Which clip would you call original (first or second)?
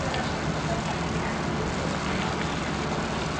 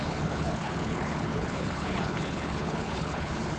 first